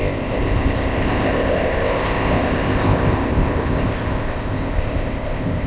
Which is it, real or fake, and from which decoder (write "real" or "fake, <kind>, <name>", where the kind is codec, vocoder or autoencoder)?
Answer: fake, codec, ZipCodec